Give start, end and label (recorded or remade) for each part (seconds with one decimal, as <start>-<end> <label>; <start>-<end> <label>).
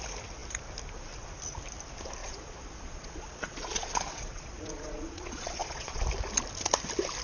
0.0-2.2 recorded; 2.2-6.0 remade; 6.0-7.2 recorded